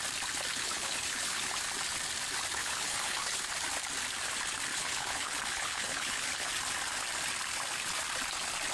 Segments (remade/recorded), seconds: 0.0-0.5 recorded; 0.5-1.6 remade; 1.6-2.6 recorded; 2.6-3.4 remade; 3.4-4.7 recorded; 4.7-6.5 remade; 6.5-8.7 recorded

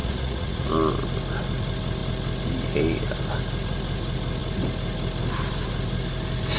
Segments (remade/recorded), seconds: 0.0-0.7 remade; 0.7-6.6 recorded

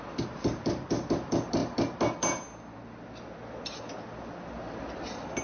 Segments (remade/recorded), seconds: 0.0-5.4 recorded

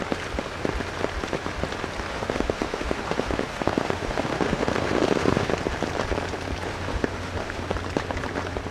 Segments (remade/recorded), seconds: 0.0-2.1 recorded; 2.1-5.5 remade; 5.5-6.7 recorded; 6.7-7.7 remade; 7.7-8.7 recorded

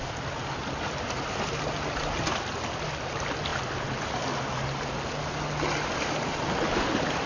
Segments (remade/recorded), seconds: 0.0-7.3 recorded